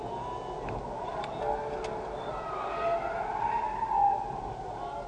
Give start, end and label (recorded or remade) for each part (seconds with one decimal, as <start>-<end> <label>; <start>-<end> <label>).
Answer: 0.0-5.1 recorded